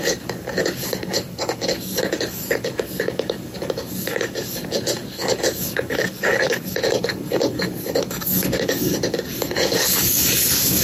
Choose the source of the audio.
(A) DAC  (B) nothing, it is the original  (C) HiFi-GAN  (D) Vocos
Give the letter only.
A